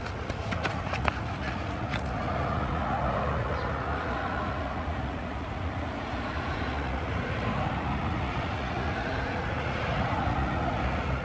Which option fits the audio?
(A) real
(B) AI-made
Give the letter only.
B